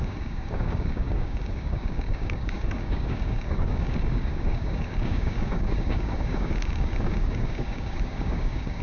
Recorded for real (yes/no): no